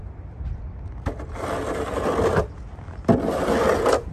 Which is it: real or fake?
real